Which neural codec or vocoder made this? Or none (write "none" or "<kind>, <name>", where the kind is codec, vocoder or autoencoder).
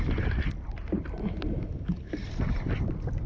none